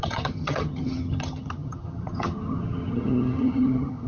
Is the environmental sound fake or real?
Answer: fake